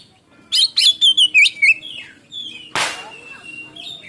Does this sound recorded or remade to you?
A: recorded